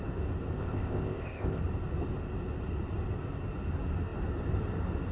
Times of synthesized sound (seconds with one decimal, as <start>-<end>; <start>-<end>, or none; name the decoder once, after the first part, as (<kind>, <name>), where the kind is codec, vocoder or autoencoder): 0.6-1.6 (codec, ZipCodec)